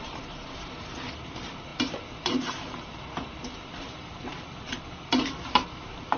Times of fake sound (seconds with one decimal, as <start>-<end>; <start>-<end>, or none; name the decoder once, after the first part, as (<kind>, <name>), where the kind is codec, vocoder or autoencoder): 0.0-6.2 (vocoder, BigVGAN v2)